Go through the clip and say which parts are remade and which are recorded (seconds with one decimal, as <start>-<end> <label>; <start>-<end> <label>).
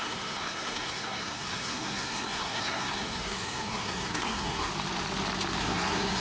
0.0-4.7 remade; 4.7-5.6 recorded; 5.6-6.2 remade